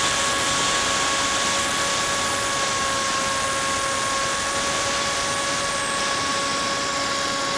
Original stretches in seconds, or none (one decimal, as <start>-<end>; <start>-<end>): 0.0-7.6

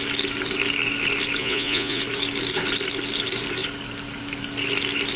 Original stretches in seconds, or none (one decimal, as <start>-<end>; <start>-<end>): 0.0-1.4; 2.0-5.2

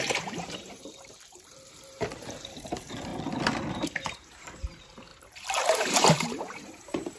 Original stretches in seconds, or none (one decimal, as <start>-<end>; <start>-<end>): 3.1-3.7; 5.1-5.6

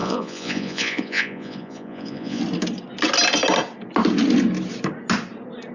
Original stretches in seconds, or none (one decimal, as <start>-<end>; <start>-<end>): 2.4-5.7

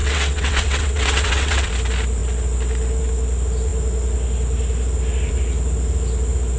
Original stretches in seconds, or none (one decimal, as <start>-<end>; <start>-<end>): 1.7-6.6

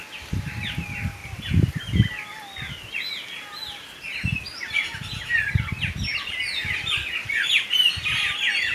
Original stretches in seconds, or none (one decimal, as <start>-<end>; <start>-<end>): 0.0-8.7

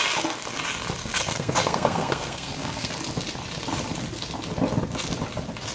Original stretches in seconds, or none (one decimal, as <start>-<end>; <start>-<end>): 0.0-1.0; 2.9-5.7

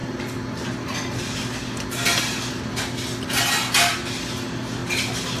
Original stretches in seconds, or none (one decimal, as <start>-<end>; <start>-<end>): 0.0-5.4